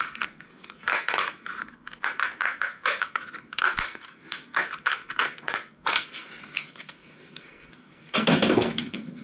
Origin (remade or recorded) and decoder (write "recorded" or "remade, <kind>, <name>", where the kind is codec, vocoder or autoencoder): remade, codec, SNAC